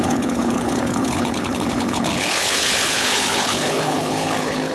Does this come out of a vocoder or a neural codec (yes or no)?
yes